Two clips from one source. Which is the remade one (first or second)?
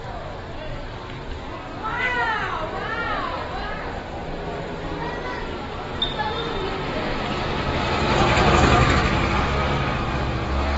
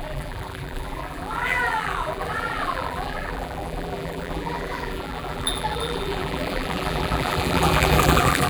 second